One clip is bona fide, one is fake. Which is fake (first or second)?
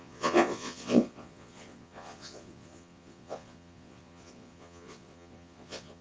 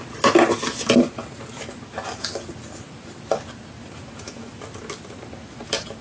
first